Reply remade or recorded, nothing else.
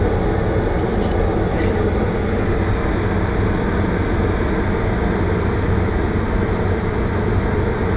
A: recorded